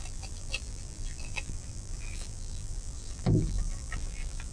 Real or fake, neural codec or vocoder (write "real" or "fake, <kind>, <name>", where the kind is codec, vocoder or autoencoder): fake, vocoder, BigVGAN v2